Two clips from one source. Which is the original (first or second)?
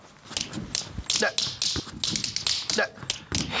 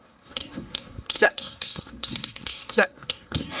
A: first